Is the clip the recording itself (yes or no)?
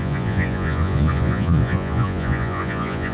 no